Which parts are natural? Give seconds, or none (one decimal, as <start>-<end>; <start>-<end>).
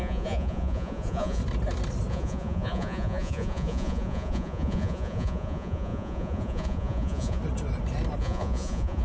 1.4-2.1; 7.4-8.2